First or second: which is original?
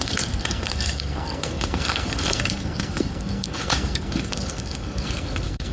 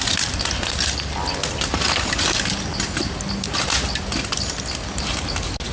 second